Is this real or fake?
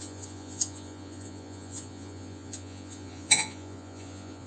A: fake